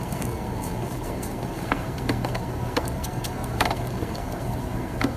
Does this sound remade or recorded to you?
remade